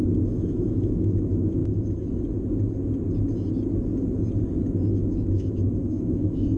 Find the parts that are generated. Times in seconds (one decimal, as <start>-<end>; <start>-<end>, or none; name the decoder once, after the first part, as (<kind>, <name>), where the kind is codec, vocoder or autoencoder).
0.0-1.6 (autoencoder, DAC-VAE); 4.9-6.6